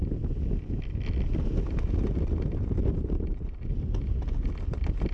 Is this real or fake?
real